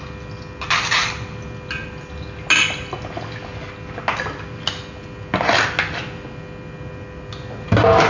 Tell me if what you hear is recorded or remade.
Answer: recorded